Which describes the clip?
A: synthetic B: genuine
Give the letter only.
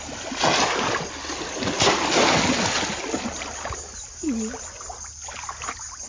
B